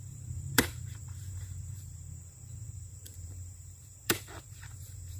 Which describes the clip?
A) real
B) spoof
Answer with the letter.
B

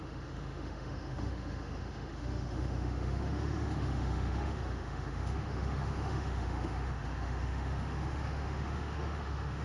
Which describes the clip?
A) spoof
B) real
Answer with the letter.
A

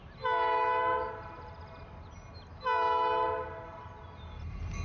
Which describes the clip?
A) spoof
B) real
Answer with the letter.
B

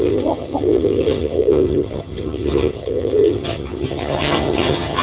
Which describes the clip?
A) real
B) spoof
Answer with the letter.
B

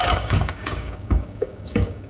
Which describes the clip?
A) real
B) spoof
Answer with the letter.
B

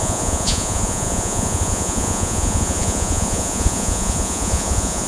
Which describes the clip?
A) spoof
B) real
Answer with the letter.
A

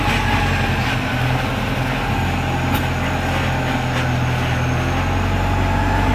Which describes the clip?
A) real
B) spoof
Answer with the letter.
A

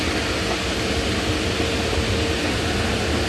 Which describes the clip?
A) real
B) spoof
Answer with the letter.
A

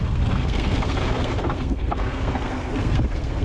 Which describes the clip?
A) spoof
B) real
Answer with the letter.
A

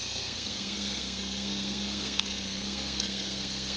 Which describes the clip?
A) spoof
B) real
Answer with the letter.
A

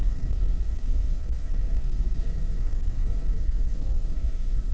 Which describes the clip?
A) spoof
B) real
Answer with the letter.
A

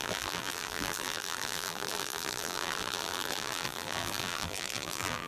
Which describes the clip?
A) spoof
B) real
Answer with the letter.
A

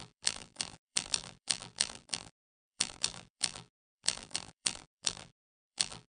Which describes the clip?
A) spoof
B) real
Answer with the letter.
A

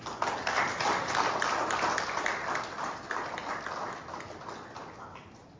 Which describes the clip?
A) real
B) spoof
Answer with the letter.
A